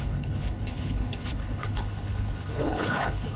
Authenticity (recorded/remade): remade